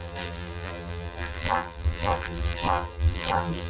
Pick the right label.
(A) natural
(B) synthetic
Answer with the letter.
B